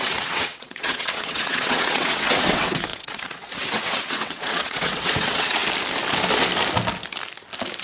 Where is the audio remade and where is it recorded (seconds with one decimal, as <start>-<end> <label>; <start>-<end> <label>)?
0.0-5.6 remade; 5.6-7.8 recorded